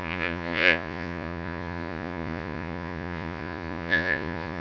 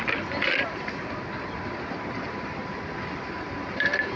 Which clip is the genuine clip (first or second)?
second